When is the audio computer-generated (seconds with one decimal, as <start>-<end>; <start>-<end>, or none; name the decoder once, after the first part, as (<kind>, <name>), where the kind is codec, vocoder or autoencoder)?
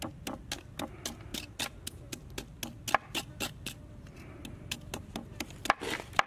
none